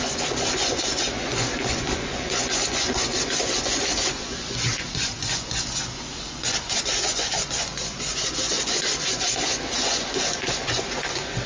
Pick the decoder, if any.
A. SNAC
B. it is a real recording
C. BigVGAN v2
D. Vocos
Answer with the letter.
D